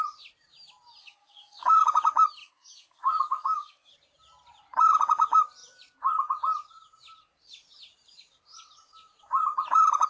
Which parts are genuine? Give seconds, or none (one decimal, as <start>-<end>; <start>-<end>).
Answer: 0.0-1.0; 1.8-2.4; 3.9-10.1